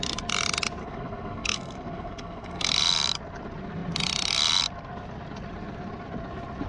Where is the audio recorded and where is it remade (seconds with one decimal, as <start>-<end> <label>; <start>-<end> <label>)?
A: 0.0-0.8 recorded; 0.8-2.7 remade; 2.7-6.7 recorded